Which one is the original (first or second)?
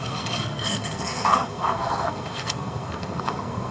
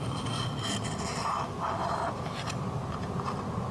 second